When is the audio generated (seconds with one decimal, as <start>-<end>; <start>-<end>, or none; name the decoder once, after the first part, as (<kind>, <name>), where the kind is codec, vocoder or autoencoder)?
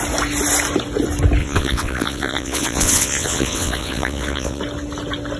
1.4-4.6 (vocoder, WaveNeXt)